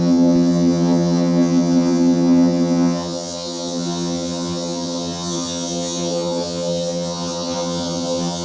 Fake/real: fake